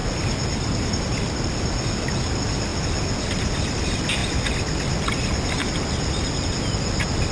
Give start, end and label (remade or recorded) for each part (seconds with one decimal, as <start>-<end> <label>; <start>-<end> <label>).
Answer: 0.0-7.3 recorded